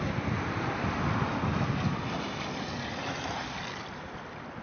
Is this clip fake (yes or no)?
no